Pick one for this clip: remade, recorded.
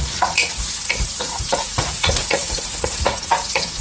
remade